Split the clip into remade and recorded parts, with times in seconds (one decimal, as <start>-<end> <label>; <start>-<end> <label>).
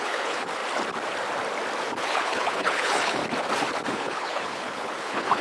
0.0-0.6 remade; 0.6-1.9 recorded; 1.9-3.2 remade; 3.2-3.9 recorded; 3.9-5.4 remade